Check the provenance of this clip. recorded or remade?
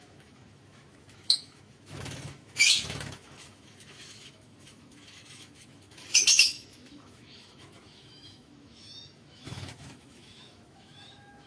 remade